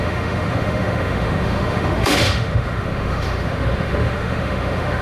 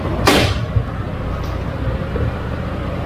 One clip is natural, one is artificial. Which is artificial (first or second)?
first